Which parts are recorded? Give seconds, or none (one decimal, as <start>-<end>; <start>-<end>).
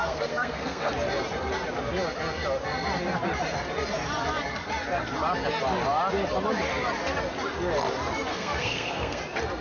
0.9-8.3; 9.2-9.6